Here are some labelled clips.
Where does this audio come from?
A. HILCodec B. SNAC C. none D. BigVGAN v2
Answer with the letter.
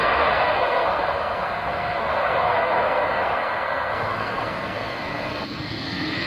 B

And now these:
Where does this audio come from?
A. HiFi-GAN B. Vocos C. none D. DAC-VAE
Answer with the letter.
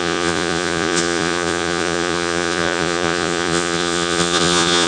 B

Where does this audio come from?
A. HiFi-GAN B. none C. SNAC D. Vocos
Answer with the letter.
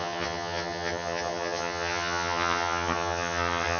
A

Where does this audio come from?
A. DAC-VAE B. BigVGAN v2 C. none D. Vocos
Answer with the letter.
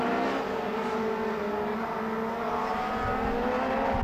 C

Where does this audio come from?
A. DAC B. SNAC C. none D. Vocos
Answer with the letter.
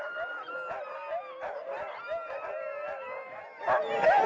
C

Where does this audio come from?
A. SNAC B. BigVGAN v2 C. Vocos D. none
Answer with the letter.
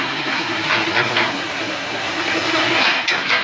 A